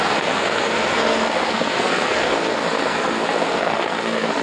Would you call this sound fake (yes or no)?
yes